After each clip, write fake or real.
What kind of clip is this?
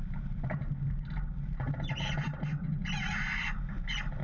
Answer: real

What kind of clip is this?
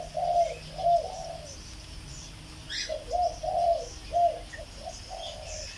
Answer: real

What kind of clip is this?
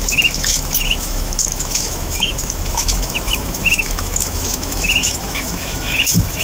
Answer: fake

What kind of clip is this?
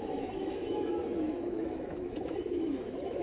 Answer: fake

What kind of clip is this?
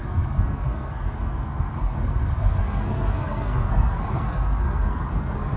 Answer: fake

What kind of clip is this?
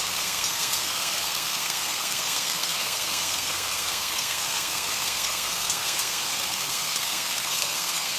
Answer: fake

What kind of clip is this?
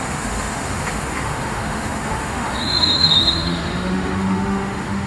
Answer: fake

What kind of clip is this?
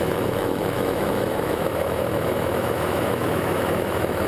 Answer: fake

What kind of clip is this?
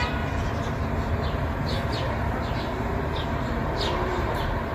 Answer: fake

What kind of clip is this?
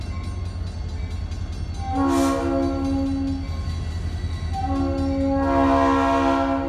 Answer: real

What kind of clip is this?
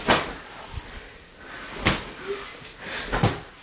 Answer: real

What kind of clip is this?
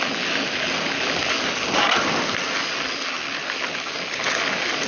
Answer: real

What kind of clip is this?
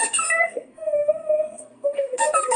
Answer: fake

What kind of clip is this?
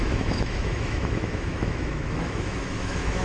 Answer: fake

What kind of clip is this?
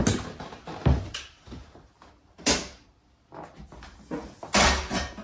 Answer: real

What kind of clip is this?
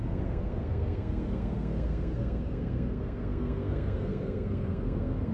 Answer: fake